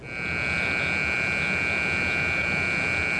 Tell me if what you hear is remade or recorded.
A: recorded